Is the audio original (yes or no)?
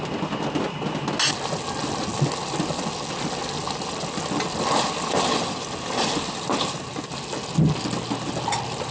yes